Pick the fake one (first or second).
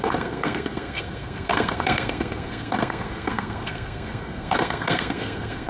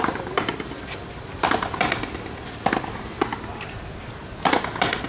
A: first